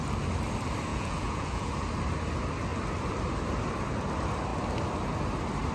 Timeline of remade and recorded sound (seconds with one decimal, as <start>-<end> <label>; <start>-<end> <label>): 0.0-0.9 recorded; 0.9-1.7 remade; 1.7-5.7 recorded